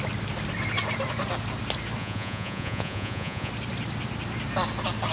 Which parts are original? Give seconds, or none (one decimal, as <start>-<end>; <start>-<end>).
0.0-2.0; 3.5-5.1